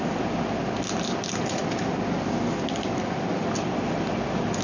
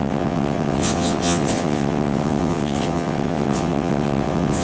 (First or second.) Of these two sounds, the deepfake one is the second